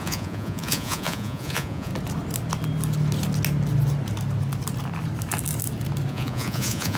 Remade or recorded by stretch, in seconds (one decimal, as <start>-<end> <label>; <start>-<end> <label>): 0.0-1.9 remade; 1.9-6.1 recorded; 6.1-7.0 remade